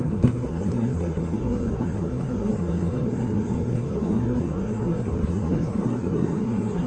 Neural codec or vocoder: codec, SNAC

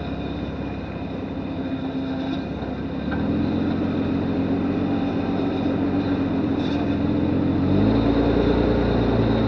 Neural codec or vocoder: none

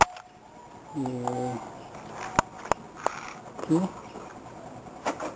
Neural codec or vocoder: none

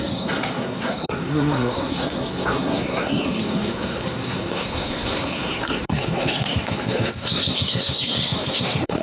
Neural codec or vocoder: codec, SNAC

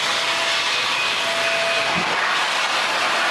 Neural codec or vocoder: none